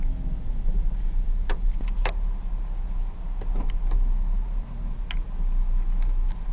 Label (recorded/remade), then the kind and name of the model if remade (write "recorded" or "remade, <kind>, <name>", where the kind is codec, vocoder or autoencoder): recorded